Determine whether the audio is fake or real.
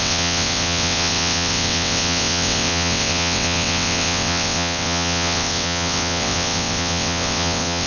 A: fake